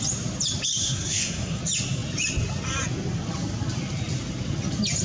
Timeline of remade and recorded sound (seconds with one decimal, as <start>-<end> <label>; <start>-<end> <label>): 0.0-0.8 recorded; 0.8-1.6 remade; 1.6-5.0 recorded